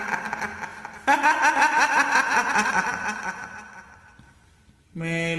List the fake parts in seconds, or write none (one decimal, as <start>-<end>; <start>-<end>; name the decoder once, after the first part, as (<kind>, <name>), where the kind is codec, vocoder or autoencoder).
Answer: 0.7-1.5 (vocoder, BigVGAN v2)